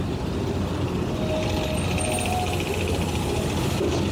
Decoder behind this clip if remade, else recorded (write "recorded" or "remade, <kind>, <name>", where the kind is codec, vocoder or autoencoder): recorded